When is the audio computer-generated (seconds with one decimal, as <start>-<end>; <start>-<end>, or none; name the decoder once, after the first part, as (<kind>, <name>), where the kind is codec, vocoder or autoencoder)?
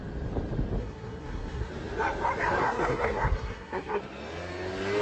0.8-1.7 (codec, SNAC); 2.6-4.0